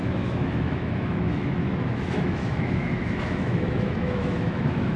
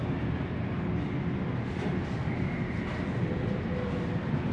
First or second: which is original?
second